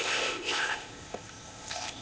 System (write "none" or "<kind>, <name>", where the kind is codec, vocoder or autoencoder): codec, ZipCodec